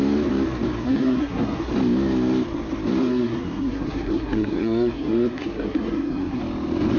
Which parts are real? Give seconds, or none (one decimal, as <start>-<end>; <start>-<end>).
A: 0.0-0.8; 1.7-3.0; 6.4-7.0